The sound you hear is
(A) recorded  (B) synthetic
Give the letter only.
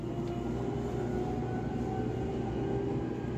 A